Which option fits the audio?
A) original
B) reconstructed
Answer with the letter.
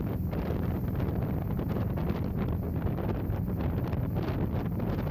A